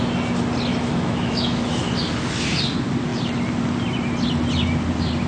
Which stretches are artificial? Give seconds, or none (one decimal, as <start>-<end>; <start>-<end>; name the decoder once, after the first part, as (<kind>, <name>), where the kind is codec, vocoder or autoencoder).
0.7-1.9 (autoencoder, DAC-VAE)